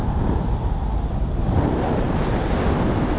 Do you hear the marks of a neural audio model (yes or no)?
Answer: no